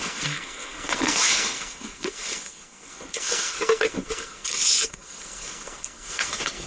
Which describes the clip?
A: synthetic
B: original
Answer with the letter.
A